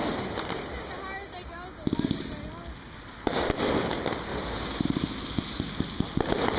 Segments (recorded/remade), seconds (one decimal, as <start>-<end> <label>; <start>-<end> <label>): 0.0-6.6 recorded